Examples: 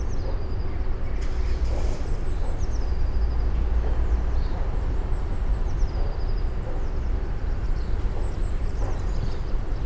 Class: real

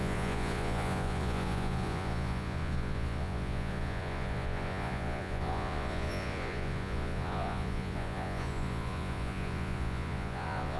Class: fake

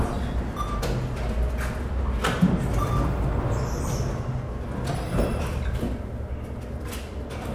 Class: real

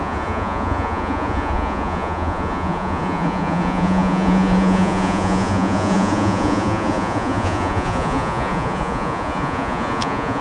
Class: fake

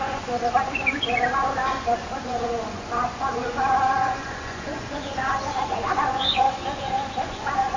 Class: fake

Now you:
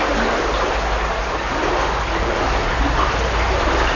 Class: real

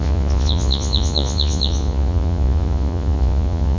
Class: fake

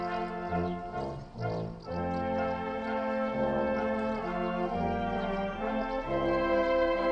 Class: real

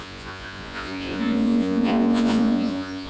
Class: fake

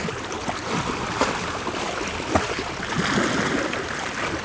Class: real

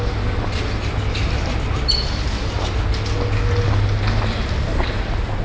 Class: real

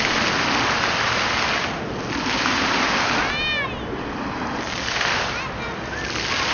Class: real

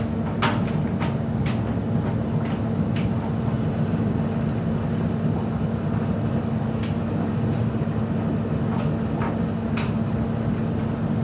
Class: real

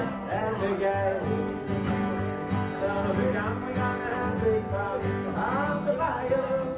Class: real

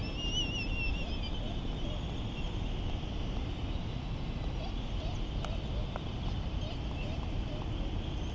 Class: real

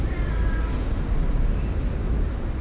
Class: real